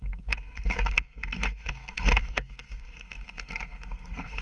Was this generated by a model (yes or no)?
yes